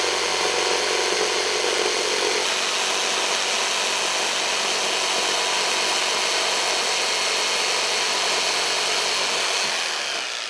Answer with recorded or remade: recorded